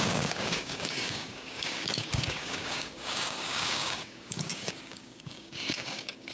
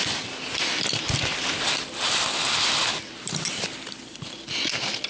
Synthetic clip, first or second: first